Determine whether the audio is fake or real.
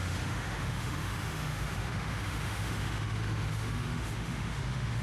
fake